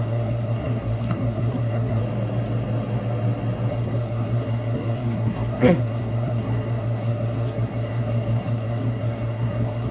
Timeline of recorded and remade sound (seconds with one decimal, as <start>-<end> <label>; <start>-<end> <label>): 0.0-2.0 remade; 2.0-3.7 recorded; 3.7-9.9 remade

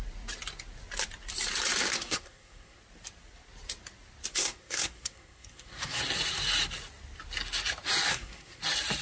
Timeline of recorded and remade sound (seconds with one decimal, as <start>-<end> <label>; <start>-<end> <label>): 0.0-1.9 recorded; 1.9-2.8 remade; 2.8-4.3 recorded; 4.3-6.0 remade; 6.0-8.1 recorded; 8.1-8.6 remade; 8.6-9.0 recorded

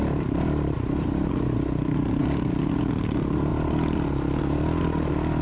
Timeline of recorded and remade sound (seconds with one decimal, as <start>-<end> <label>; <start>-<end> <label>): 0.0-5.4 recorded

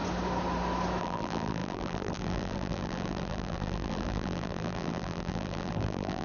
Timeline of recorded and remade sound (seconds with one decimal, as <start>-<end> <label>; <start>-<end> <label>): 0.0-1.0 recorded; 1.0-6.2 remade

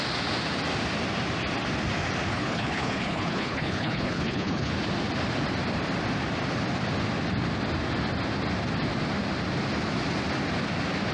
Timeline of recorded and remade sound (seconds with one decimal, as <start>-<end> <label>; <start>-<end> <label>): 0.0-2.3 recorded; 2.3-4.7 remade; 4.7-11.1 recorded